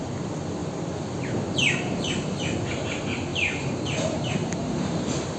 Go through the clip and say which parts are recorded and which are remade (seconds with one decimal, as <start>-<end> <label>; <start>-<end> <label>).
0.0-0.6 recorded; 0.6-2.6 remade; 2.6-3.3 recorded; 3.3-5.4 remade